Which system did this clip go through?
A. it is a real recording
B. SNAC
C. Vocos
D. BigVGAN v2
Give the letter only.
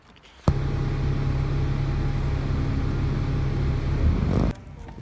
A